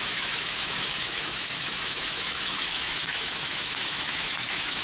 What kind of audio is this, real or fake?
fake